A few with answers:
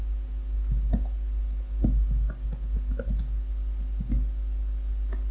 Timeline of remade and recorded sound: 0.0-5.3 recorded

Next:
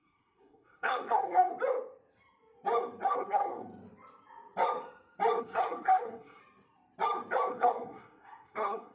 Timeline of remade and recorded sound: 0.0-1.5 remade; 1.5-3.1 recorded; 3.1-3.6 remade; 3.6-5.4 recorded; 5.4-6.4 remade; 6.4-7.5 recorded; 7.5-8.9 remade

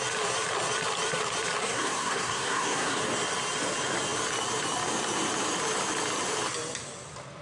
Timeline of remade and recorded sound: 0.0-1.6 recorded; 1.6-3.0 remade; 3.0-7.4 recorded

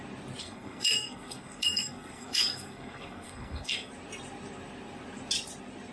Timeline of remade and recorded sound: 0.0-0.4 recorded; 0.4-3.9 remade; 3.9-5.9 recorded

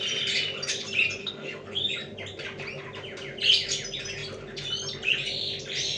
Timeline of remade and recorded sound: 0.0-1.2 recorded; 1.2-1.9 remade; 1.9-6.0 recorded

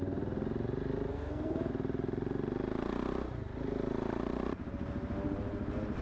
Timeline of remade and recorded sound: 0.0-1.1 recorded; 1.1-1.7 remade; 1.7-6.0 recorded